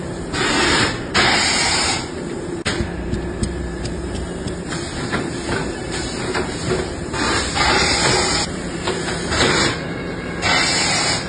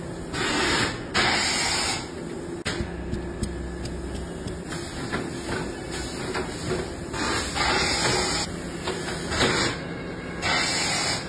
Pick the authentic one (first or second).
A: second